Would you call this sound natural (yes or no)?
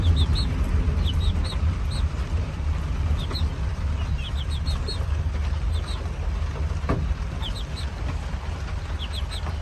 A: yes